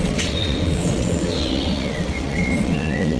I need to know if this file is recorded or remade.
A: remade